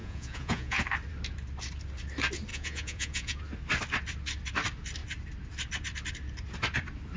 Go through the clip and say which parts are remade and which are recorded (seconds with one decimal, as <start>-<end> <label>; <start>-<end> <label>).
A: 0.0-0.8 remade; 0.8-2.5 recorded; 2.5-3.4 remade; 3.4-7.2 recorded